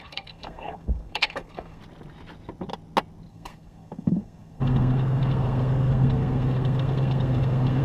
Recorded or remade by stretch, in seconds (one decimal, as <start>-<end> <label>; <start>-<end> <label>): 0.0-1.8 remade; 1.8-3.3 recorded; 3.3-7.8 remade